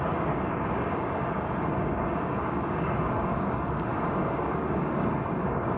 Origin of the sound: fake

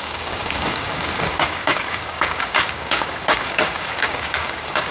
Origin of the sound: fake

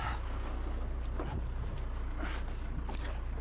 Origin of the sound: real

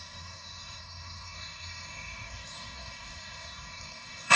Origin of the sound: fake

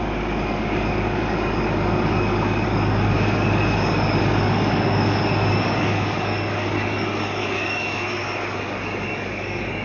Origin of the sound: fake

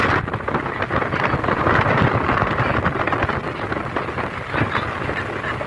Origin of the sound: real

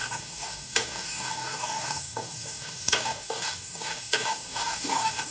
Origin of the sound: fake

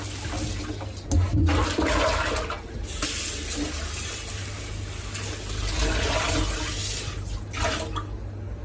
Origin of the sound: real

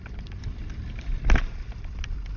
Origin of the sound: real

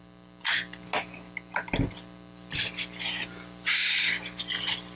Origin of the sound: real